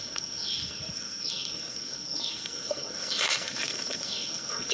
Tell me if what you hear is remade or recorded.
remade